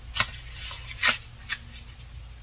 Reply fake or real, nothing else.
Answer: real